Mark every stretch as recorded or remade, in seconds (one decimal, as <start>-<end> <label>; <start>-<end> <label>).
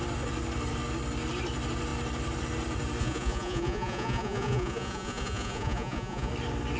0.0-3.0 recorded; 3.0-6.3 remade; 6.3-6.8 recorded